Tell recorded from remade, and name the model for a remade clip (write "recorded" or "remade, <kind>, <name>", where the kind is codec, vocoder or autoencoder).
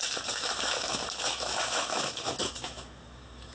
remade, autoencoder, DAC-VAE